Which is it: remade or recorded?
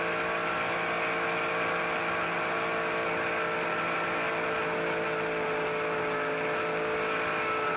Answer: recorded